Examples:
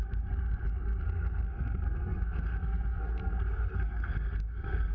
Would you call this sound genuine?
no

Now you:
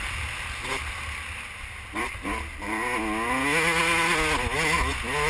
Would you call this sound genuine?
yes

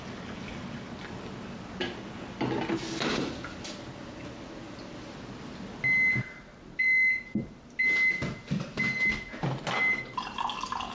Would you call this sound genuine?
yes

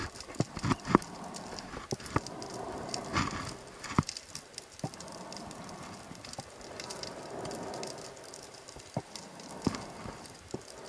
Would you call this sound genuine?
yes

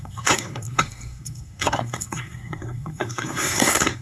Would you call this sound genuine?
no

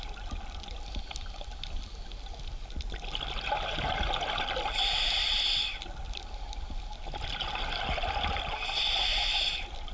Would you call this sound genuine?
yes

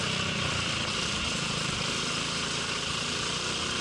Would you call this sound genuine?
yes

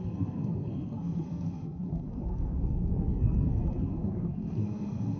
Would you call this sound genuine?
no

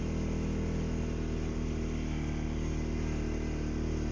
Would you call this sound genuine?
yes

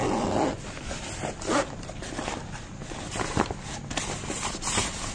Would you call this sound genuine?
yes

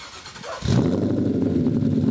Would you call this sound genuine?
yes